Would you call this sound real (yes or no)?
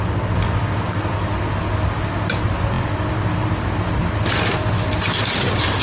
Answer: yes